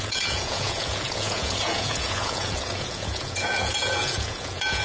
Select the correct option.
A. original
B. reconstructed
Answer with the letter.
B